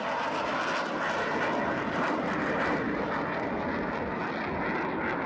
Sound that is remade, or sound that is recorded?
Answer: recorded